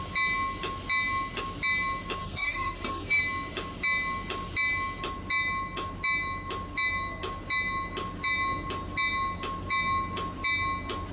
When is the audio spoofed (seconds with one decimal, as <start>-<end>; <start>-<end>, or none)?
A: 2.2-3.2